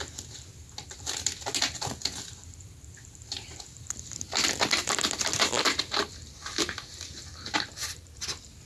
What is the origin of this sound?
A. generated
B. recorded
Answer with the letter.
B